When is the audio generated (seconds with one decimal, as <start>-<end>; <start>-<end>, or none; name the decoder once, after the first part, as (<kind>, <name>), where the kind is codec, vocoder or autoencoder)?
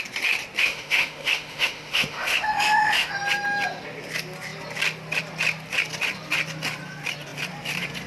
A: 0.6-3.1 (autoencoder, DAC-VAE)